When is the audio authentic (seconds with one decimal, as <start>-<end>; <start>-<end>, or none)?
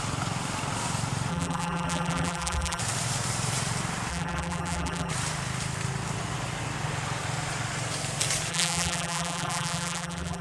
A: 0.0-1.3; 2.8-4.1; 5.1-8.5